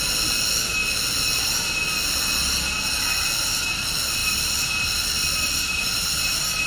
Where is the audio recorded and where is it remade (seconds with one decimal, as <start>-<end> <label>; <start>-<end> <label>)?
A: 0.0-4.2 recorded; 4.2-6.7 remade

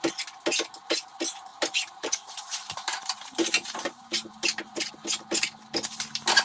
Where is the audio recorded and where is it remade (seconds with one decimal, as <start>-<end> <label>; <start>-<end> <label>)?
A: 0.0-1.5 recorded; 1.5-4.9 remade; 4.9-6.4 recorded

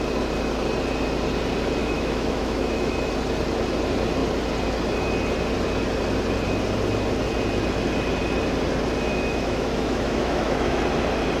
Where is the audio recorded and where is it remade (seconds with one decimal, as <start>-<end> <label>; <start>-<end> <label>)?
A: 0.0-1.8 recorded; 1.8-3.1 remade; 3.1-9.1 recorded; 9.1-10.8 remade; 10.8-11.4 recorded

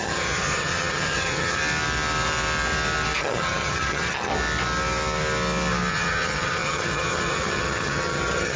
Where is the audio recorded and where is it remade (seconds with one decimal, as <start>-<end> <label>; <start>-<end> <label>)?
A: 0.0-1.6 remade; 1.6-3.2 recorded; 3.2-4.3 remade; 4.3-5.9 recorded; 5.9-8.6 remade

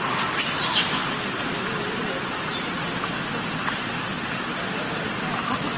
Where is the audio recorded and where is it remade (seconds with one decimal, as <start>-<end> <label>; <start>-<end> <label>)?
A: 0.0-5.8 recorded

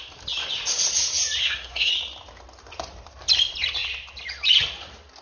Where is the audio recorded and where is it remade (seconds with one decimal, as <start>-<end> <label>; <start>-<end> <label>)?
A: 0.0-1.4 recorded; 1.4-1.9 remade; 1.9-5.2 recorded